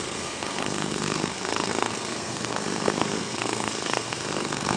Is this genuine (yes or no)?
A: no